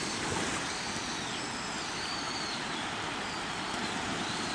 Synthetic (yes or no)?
no